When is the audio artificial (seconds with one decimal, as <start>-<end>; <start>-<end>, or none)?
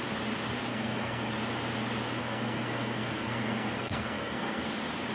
0.7-1.3; 2.2-4.6